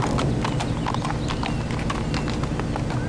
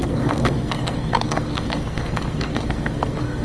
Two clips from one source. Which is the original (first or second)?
first